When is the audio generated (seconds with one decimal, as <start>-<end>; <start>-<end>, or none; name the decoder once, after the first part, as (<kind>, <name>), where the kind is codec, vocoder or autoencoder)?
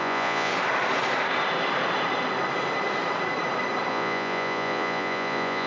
0.0-0.5 (vocoder, Vocos); 3.9-5.7